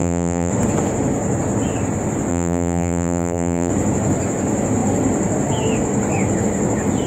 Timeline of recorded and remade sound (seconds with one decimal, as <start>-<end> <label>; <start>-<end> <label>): 0.0-0.5 remade; 0.5-2.3 recorded; 2.3-3.7 remade; 3.7-7.1 recorded